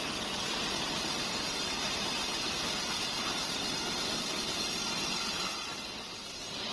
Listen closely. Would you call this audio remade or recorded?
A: recorded